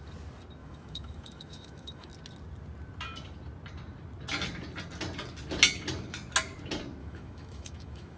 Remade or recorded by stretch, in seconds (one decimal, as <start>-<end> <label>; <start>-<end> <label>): 0.0-0.6 recorded; 0.6-2.1 remade; 2.1-7.0 recorded; 7.0-8.2 remade